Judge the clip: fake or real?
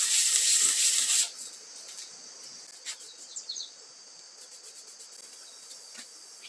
real